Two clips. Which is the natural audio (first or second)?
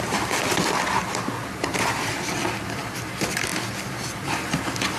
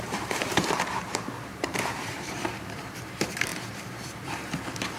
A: first